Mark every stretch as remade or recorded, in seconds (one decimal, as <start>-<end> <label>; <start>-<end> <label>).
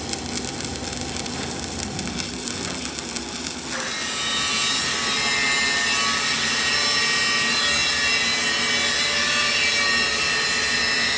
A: 0.0-11.2 recorded